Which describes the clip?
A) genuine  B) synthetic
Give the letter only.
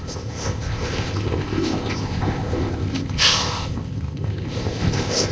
B